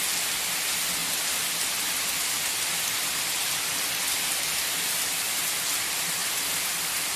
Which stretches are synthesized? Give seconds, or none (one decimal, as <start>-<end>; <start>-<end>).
1.0-4.3; 6.2-7.2